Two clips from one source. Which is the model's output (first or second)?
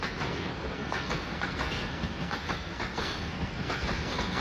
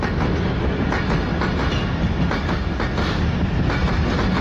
first